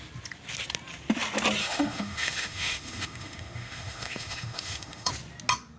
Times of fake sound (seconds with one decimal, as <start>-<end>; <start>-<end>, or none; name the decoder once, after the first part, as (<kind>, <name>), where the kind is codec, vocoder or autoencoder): 1.6-5.1 (autoencoder, DAC-VAE)